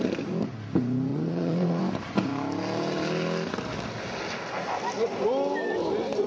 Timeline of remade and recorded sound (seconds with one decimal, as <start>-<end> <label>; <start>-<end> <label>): 0.0-1.1 recorded; 1.1-1.8 remade; 1.8-6.3 recorded

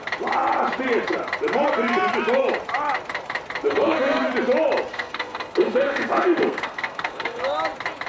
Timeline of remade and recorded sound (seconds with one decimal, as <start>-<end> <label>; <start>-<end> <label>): 0.0-3.7 recorded; 3.7-4.3 remade; 4.3-4.9 recorded; 4.9-7.4 remade; 7.4-8.1 recorded